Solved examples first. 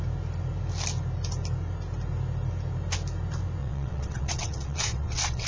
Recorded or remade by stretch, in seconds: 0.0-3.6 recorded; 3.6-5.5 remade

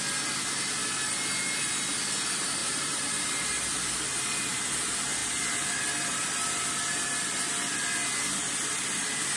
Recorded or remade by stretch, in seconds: 0.0-2.6 recorded; 2.6-3.3 remade; 3.3-9.4 recorded

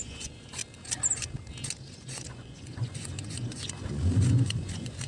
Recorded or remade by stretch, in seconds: 0.0-0.6 remade; 0.6-1.9 recorded; 1.9-5.1 remade

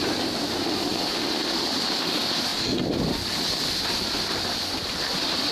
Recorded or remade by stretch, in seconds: 0.0-5.5 recorded